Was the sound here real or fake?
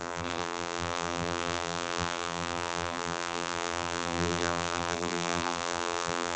fake